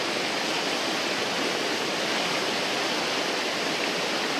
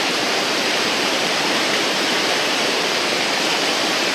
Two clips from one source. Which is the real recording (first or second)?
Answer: first